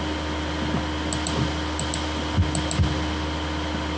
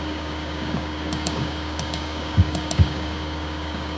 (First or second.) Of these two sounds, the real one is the first